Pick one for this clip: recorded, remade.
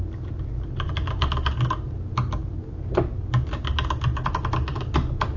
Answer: recorded